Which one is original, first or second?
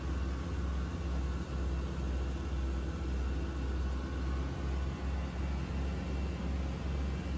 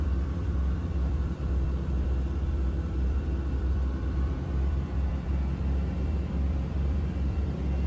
first